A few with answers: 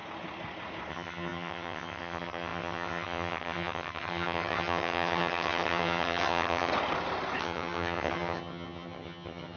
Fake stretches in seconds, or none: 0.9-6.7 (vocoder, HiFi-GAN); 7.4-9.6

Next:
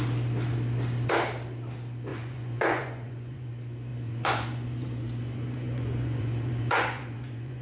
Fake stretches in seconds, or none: 2.1-3.5 (vocoder, Vocos); 3.9-7.6

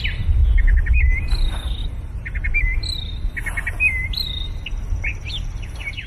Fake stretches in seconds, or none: none

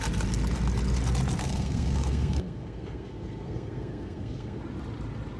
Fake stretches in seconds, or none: 1.4-4.6 (codec, SNAC)

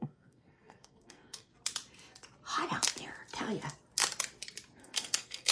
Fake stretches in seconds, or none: 0.0-1.5 (codec, SNAC); 4.8-5.5

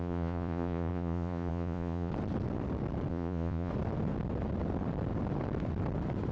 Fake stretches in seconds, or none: 0.0-2.1 (vocoder, Vocos); 3.1-3.7

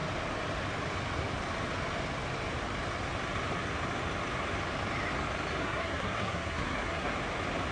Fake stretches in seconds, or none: 5.6-7.1 (codec, SNAC)